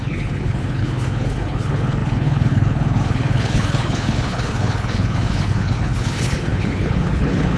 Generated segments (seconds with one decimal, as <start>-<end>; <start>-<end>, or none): 0.0-7.6